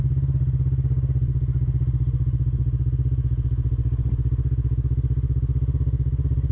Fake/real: real